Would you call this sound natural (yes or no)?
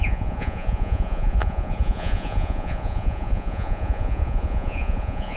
no